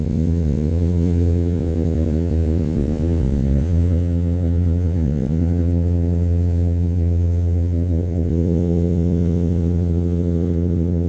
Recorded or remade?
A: remade